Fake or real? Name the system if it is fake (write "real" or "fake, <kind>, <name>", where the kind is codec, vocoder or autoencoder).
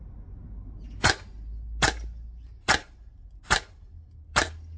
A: real